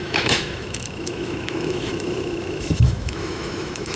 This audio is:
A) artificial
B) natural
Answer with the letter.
A